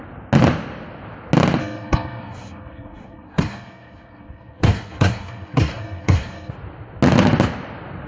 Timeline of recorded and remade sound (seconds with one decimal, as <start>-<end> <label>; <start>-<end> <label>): 0.0-1.6 recorded; 1.6-6.5 remade; 6.5-8.1 recorded